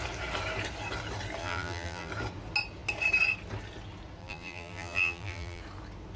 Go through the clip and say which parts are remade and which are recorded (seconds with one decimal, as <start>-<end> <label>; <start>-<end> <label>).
0.0-1.4 recorded; 1.4-2.1 remade; 2.1-4.2 recorded; 4.2-5.6 remade; 5.6-6.2 recorded

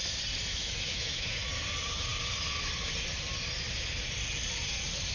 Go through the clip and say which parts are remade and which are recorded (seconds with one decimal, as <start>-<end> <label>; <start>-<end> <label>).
0.0-0.5 recorded; 0.5-1.4 remade; 1.4-5.1 recorded

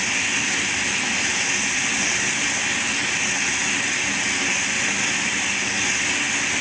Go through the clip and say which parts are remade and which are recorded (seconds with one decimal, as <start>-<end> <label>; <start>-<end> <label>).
0.0-6.6 recorded

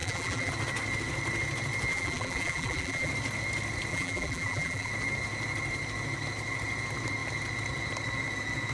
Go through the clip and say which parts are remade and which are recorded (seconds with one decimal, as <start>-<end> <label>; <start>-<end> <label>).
0.0-0.5 remade; 0.5-1.9 recorded; 1.9-3.1 remade; 3.1-3.9 recorded; 3.9-4.9 remade; 4.9-8.7 recorded

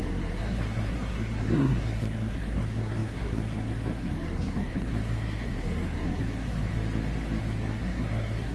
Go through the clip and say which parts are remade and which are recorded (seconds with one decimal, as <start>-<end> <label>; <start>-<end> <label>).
0.0-6.7 remade; 6.7-7.4 recorded; 7.4-8.5 remade

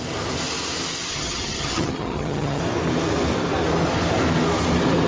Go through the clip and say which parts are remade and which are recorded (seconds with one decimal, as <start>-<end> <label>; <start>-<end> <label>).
0.0-1.1 recorded; 1.1-2.6 remade; 2.6-5.1 recorded

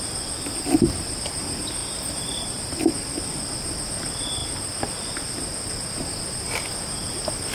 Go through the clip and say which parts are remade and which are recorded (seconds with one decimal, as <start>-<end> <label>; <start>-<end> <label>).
0.0-1.8 recorded; 1.8-2.8 remade; 2.8-7.5 recorded

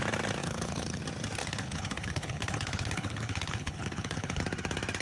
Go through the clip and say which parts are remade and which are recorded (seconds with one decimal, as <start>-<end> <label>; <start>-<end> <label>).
0.0-0.4 recorded; 0.4-1.0 remade; 1.0-1.4 recorded; 1.4-4.4 remade; 4.4-5.0 recorded